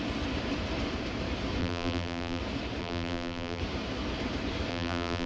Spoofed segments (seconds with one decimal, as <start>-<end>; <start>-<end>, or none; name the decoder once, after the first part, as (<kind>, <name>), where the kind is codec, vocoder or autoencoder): 1.6-2.4 (vocoder, BigVGAN v2); 2.8-3.6; 4.7-5.3